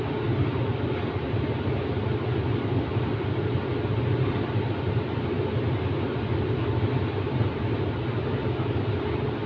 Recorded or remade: recorded